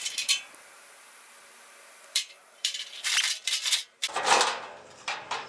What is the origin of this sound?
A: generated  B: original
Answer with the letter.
A